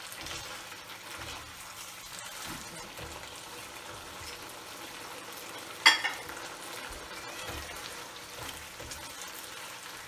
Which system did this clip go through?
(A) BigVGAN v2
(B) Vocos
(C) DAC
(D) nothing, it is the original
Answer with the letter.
D